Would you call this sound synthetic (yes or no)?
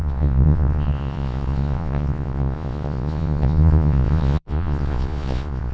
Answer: yes